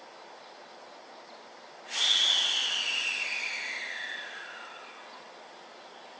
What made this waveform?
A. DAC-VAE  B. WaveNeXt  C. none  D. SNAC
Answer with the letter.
C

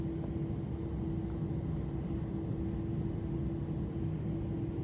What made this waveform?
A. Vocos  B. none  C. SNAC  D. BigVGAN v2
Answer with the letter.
B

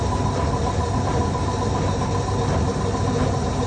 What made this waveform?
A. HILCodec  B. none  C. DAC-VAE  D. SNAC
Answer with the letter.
B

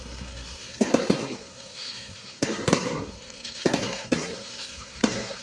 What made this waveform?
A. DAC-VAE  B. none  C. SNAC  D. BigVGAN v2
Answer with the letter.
C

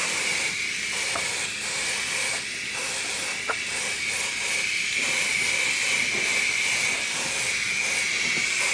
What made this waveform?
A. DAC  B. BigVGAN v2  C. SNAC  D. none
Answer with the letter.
D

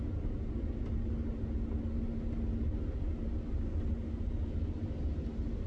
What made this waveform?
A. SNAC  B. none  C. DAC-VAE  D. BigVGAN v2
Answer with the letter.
B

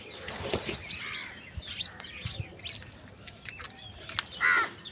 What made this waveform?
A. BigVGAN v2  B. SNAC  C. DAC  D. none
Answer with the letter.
D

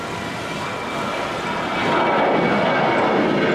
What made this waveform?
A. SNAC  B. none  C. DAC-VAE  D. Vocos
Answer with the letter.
B